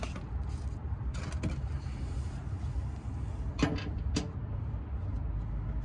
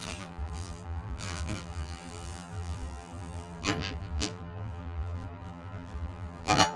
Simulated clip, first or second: second